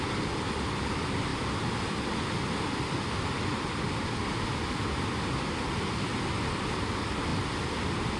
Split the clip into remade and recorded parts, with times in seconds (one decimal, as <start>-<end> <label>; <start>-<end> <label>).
0.0-8.2 recorded